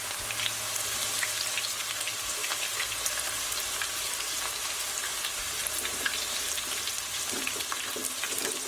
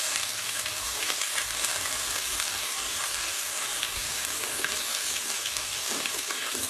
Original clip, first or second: first